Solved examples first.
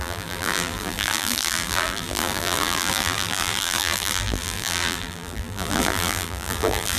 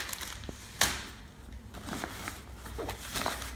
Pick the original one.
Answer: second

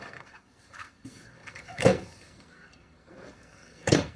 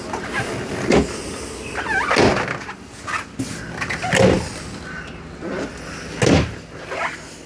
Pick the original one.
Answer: second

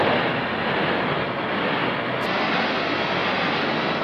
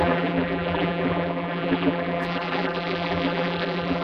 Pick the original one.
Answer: first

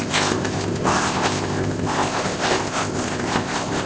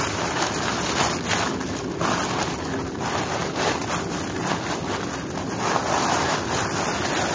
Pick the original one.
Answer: second